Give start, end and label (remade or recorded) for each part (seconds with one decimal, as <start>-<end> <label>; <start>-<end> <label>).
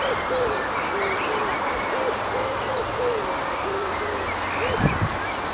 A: 0.0-5.5 recorded